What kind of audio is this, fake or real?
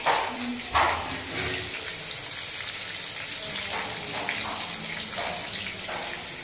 real